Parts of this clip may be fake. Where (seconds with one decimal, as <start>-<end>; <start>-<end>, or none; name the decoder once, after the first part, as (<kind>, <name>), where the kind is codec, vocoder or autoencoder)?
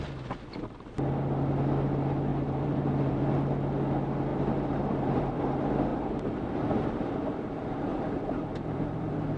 2.3-3.2 (vocoder, BigVGAN v2); 4.3-5.4; 5.9-9.4